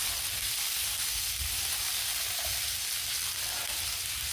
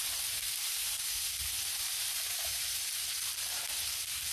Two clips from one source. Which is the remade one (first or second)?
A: second